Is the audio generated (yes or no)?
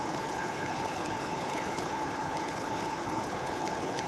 yes